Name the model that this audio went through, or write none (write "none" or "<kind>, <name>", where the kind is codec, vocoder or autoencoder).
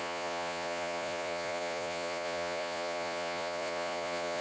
vocoder, Vocos